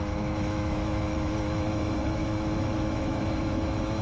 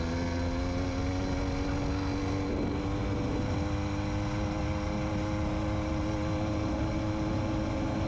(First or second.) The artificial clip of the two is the first